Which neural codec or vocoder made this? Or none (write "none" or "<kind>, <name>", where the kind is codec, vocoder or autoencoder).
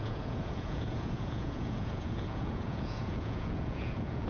vocoder, Vocos